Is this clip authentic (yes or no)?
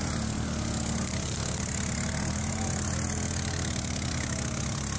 yes